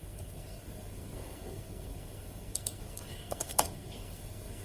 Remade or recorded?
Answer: remade